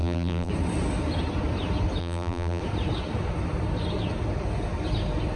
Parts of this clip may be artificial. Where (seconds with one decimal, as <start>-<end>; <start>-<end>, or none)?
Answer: 0.0-0.5; 2.0-2.6